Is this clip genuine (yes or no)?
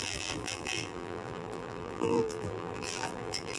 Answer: no